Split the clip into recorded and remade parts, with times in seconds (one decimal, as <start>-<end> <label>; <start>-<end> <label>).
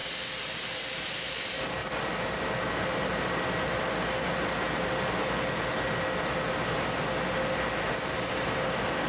0.0-9.1 recorded